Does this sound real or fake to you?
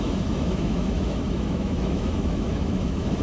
fake